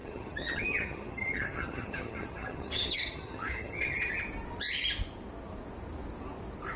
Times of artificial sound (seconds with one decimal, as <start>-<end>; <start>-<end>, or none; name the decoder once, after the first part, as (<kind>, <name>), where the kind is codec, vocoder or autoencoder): 0.0-4.1 (vocoder, HiFi-GAN)